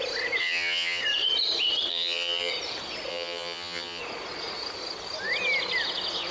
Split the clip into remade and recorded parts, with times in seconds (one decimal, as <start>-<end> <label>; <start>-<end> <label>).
0.0-0.4 recorded; 0.4-1.0 remade; 1.0-1.9 recorded; 1.9-2.5 remade; 2.5-3.1 recorded; 3.1-4.0 remade; 4.0-6.3 recorded